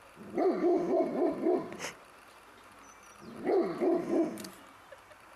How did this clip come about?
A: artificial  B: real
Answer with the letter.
B